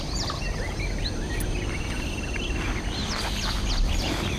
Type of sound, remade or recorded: recorded